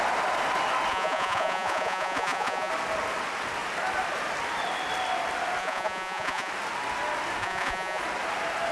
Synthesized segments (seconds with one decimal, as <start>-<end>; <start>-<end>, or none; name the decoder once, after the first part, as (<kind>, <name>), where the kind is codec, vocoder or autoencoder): 0.9-2.7 (vocoder, Vocos); 5.6-6.5; 7.4-8.0